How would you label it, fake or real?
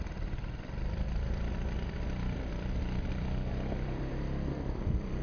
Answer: fake